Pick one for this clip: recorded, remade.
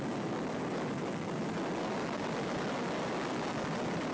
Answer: recorded